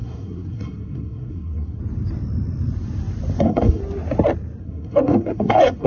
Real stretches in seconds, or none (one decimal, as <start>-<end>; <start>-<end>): 1.8-3.4; 3.8-4.6

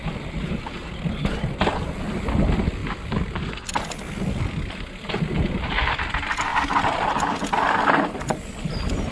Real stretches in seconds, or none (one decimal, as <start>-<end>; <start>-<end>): 1.5-9.1

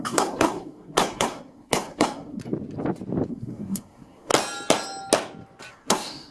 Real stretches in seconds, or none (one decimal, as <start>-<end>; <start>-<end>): 2.4-3.3; 4.3-5.7